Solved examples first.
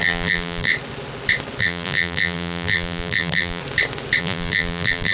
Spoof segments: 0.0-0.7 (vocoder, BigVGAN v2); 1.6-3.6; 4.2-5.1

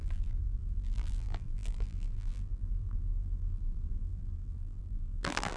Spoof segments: 0.0-5.6 (vocoder, BigVGAN v2)

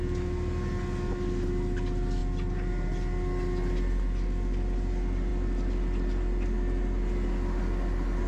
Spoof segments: none

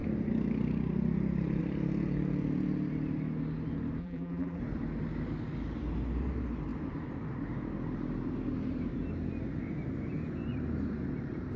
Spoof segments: 4.0-4.6 (vocoder, BigVGAN v2)

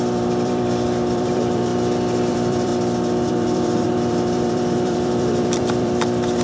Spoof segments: 0.0-1.7 (vocoder, BigVGAN v2); 2.3-2.7; 3.3-6.4